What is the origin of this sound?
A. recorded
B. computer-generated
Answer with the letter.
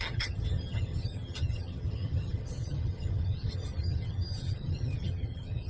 B